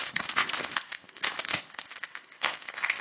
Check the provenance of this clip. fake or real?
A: fake